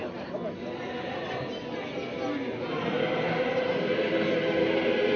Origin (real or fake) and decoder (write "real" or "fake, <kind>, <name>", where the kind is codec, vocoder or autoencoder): real